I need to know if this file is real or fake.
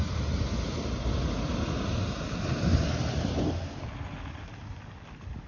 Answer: real